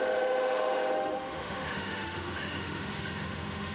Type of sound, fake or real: fake